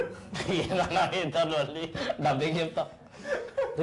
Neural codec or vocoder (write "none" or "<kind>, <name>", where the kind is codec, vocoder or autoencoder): none